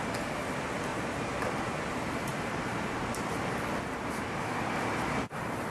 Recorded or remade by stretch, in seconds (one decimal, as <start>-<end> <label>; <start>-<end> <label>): 0.0-0.9 recorded; 0.9-1.5 remade; 1.5-2.3 recorded; 2.3-5.7 remade